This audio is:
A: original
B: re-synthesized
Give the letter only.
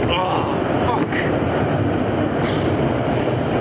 A